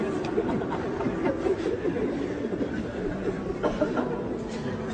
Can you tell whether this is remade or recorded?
recorded